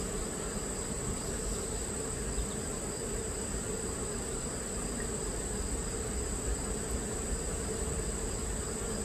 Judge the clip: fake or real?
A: real